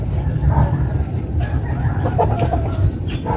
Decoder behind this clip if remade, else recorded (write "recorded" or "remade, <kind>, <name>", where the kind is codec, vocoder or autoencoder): recorded